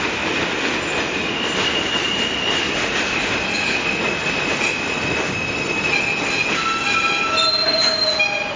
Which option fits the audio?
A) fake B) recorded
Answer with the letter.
B